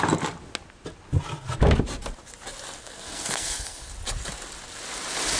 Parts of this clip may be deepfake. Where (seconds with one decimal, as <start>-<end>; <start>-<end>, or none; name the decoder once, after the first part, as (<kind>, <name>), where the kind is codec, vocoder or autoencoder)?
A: 2.8-3.9 (codec, SNAC)

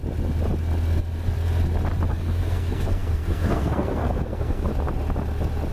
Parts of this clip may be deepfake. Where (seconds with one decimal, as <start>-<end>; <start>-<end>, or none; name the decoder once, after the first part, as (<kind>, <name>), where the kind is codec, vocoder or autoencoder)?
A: 2.1-4.7 (codec, SNAC)

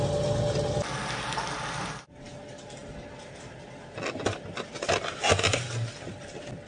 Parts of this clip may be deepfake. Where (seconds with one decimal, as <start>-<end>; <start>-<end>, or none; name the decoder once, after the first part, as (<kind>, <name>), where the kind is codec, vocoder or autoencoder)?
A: none